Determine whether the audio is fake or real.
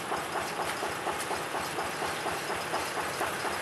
real